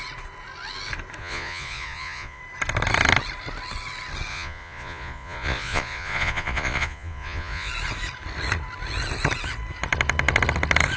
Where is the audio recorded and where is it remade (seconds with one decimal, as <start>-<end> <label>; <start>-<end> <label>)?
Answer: 0.0-1.2 recorded; 1.2-2.4 remade; 2.4-4.3 recorded; 4.3-7.7 remade; 7.7-11.0 recorded

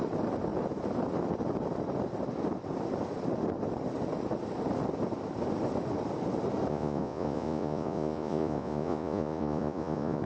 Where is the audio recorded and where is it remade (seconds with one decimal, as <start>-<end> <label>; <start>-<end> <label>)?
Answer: 0.0-6.7 recorded; 6.7-10.2 remade

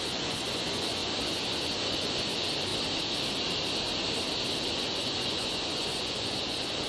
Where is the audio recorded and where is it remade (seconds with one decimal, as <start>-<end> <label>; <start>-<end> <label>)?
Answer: 0.0-2.7 remade; 2.7-4.7 recorded; 4.7-6.9 remade

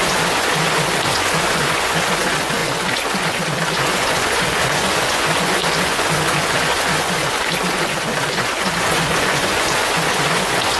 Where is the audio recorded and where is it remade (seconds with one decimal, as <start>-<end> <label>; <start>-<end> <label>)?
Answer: 0.0-10.8 remade

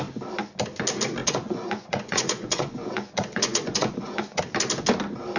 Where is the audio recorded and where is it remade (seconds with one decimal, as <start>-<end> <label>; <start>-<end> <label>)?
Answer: 0.0-1.2 recorded; 1.2-4.4 remade; 4.4-5.4 recorded

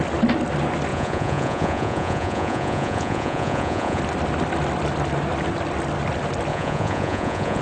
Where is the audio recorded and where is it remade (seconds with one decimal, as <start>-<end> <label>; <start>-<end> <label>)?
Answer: 0.0-0.9 recorded; 0.9-4.0 remade; 4.0-6.5 recorded; 6.5-7.6 remade

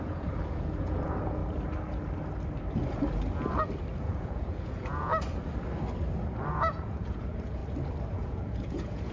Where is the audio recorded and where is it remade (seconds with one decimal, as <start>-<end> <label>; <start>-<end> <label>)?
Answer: 0.0-1.4 remade; 1.4-4.0 recorded; 4.0-5.1 remade; 5.1-6.5 recorded; 6.5-7.6 remade; 7.6-8.2 recorded; 8.2-9.1 remade